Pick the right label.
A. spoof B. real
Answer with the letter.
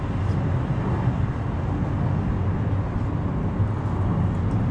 B